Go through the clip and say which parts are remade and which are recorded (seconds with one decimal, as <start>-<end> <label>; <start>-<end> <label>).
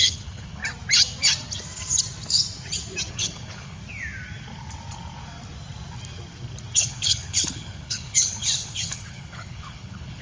0.0-0.6 remade; 0.6-3.1 recorded; 3.1-3.8 remade; 3.8-6.8 recorded; 6.8-10.2 remade